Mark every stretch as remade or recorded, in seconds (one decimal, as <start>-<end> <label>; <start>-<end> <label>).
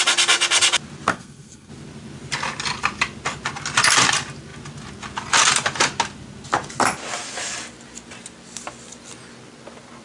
0.0-1.1 recorded; 1.1-1.7 remade; 1.7-10.0 recorded